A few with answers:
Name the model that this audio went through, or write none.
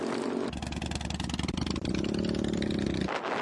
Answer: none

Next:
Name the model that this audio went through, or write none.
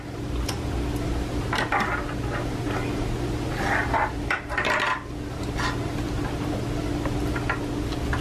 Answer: none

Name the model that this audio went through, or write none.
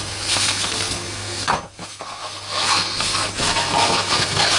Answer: codec, SNAC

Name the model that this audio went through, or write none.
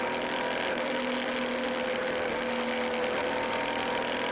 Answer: none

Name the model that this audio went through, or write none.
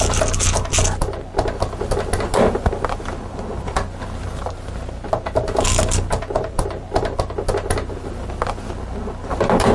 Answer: none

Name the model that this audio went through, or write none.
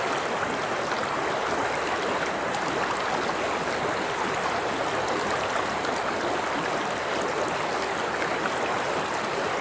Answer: none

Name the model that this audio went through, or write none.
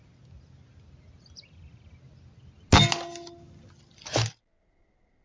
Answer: none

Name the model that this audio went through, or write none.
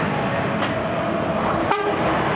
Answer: none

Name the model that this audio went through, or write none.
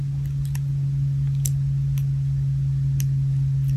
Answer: none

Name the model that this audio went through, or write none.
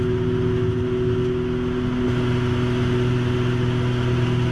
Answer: none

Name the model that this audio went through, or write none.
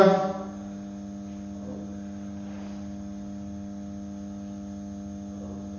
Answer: none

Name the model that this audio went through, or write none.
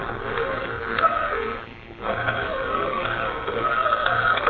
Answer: codec, SNAC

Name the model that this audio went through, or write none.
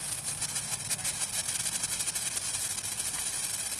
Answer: none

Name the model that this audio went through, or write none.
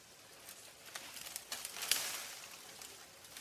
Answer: none